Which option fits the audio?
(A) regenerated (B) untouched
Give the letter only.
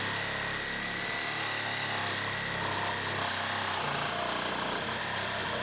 B